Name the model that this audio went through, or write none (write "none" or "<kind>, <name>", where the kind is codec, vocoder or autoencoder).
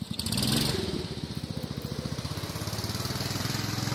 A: vocoder, BigVGAN v2